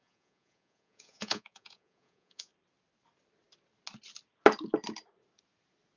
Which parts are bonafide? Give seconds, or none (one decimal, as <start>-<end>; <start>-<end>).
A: 2.5-6.0